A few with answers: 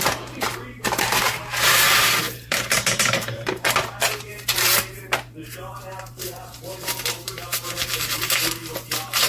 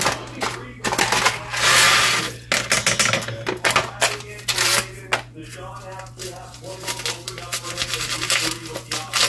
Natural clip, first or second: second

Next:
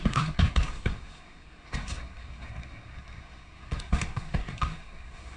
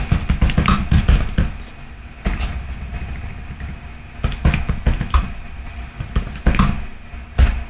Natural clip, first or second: second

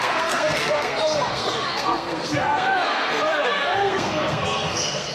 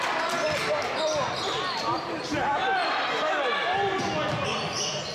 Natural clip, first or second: second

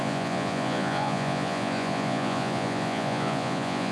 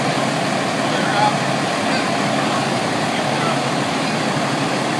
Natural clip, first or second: second